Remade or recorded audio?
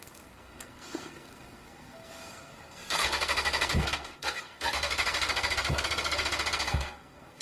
remade